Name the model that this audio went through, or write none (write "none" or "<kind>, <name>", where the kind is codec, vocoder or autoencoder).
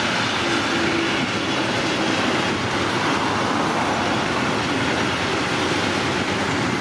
none